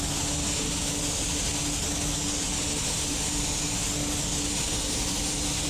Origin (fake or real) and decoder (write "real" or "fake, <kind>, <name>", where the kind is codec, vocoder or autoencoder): real